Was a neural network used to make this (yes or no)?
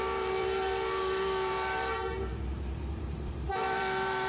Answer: yes